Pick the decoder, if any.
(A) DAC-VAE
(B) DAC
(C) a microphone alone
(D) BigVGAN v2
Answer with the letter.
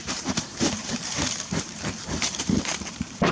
D